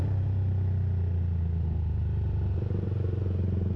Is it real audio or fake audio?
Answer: real